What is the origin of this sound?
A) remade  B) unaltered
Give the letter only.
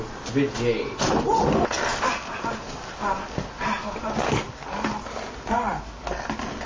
B